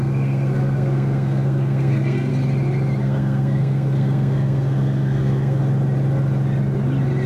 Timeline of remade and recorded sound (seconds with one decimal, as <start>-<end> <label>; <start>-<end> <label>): 0.0-2.3 remade; 2.3-3.0 recorded; 3.0-5.6 remade; 5.6-7.3 recorded

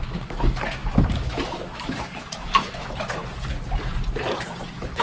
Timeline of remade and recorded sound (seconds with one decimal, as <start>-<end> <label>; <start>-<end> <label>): 0.0-3.2 remade; 3.2-4.6 recorded; 4.6-5.0 remade

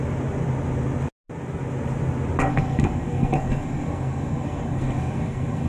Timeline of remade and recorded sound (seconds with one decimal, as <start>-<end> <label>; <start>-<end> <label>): 0.0-2.5 recorded; 2.5-5.7 remade